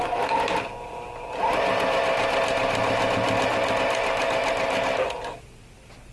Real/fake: real